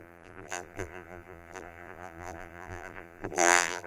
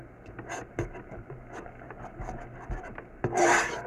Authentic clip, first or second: second